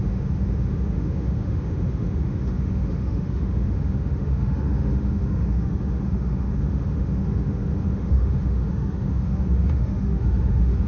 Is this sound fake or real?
fake